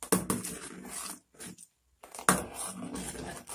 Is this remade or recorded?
recorded